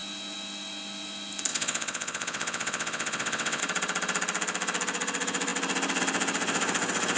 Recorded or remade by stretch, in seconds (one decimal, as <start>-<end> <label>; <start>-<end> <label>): 0.0-1.5 recorded; 1.5-3.6 remade; 3.6-7.2 recorded